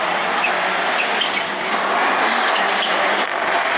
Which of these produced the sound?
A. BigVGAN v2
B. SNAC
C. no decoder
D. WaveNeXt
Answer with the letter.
C